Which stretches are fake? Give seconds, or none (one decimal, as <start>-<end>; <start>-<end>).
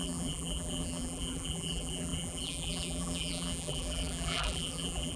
0.0-5.2